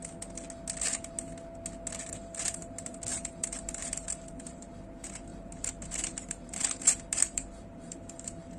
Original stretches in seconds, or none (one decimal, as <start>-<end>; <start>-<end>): 0.0-1.9